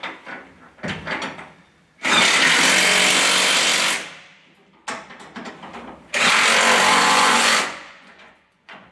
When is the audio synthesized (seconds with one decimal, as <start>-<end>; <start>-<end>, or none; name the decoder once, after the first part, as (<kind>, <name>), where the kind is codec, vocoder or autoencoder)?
6.9-8.9 (vocoder, Vocos)